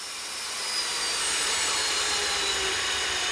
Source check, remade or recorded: recorded